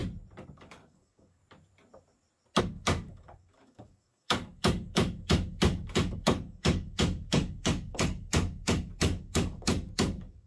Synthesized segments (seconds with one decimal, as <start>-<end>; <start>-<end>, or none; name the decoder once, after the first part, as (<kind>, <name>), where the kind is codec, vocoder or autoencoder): 0.6-1.4 (codec, DAC); 2.6-10.5